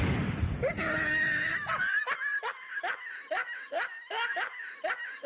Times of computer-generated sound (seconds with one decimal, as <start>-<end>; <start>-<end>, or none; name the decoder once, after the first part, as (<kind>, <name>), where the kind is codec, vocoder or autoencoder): none